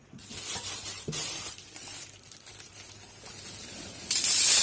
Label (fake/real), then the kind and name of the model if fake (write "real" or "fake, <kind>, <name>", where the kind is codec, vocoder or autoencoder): real